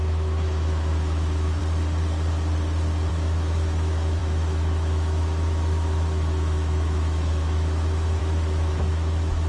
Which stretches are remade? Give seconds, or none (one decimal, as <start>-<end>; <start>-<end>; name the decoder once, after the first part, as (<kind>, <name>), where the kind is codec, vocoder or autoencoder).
0.0-1.6 (autoencoder, DAC-VAE); 3.1-9.5